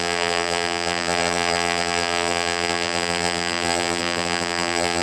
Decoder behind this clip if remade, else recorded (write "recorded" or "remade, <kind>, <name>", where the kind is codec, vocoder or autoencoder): remade, vocoder, BigVGAN v2